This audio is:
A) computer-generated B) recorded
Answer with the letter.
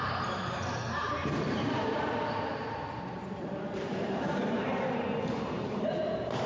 A